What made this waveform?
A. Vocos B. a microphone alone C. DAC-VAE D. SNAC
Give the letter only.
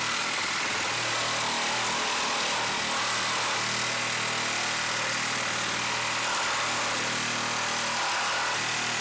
B